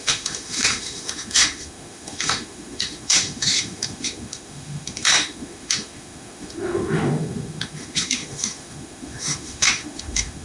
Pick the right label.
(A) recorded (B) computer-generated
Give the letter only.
B